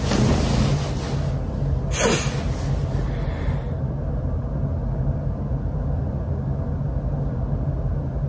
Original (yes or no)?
yes